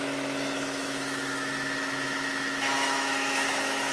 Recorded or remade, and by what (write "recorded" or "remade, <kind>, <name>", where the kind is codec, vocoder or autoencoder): remade, autoencoder, DAC-VAE